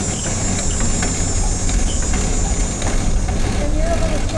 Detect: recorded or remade recorded